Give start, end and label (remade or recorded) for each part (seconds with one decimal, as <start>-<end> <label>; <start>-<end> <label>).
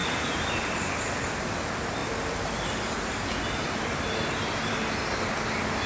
0.0-0.6 remade; 0.6-2.0 recorded; 2.0-4.9 remade; 4.9-5.9 recorded